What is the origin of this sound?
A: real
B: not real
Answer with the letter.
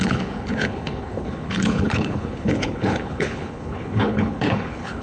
B